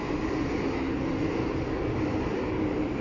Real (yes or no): yes